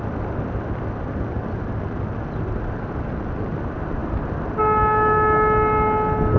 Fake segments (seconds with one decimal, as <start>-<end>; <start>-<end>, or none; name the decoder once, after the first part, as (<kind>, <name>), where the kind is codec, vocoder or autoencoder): none